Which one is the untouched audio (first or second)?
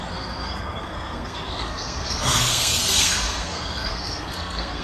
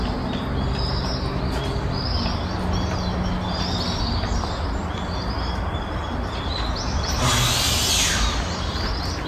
second